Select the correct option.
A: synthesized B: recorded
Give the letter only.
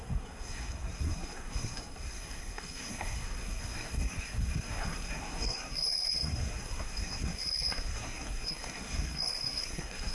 A